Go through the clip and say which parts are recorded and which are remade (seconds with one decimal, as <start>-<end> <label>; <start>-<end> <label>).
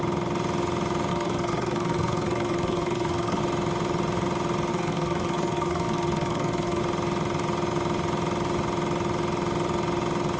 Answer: 0.0-1.1 recorded; 1.1-3.4 remade; 3.4-4.7 recorded; 4.7-6.8 remade; 6.8-10.4 recorded